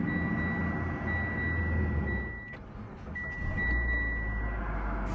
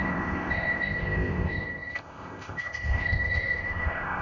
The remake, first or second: second